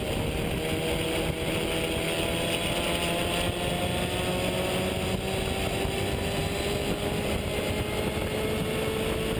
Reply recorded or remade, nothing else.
recorded